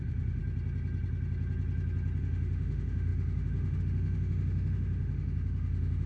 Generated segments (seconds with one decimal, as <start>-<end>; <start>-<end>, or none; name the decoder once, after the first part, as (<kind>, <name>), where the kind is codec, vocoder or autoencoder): 0.0-0.4 (autoencoder, DAC-VAE); 2.2-6.1